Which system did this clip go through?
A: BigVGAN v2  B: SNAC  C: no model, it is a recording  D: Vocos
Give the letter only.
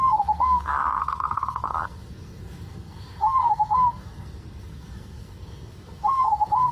B